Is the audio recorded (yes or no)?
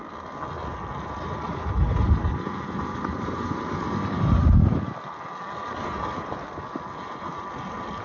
no